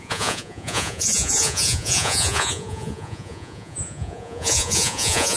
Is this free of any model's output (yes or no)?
no